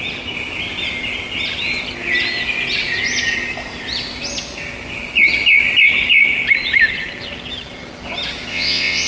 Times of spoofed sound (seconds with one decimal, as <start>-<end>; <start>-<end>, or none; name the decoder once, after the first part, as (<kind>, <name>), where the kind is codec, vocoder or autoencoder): 8.5-9.1 (vocoder, WaveNeXt)